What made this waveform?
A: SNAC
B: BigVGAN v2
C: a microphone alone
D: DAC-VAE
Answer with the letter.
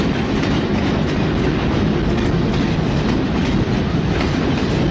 C